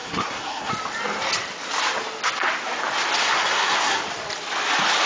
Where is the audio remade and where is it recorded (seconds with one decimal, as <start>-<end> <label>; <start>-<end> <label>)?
0.0-0.7 remade; 0.7-3.2 recorded; 3.2-4.0 remade; 4.0-5.1 recorded